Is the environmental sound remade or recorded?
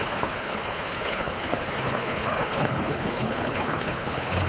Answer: remade